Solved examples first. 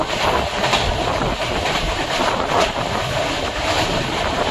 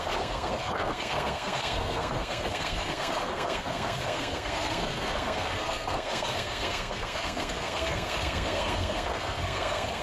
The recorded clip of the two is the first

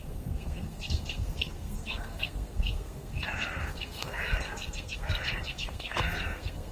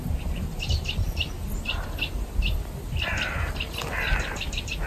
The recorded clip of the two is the second